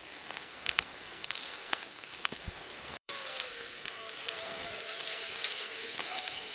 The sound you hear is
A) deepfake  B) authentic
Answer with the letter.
A